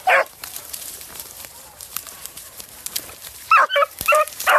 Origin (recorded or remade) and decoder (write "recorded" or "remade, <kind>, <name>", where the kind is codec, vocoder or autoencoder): remade, vocoder, BigVGAN v2